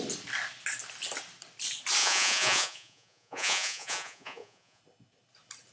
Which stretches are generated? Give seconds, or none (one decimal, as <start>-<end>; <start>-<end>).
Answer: 2.0-4.8